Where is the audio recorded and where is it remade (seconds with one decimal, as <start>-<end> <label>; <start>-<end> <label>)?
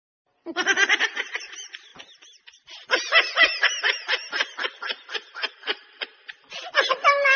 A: 0.0-1.9 remade; 1.9-5.5 recorded; 5.5-7.4 remade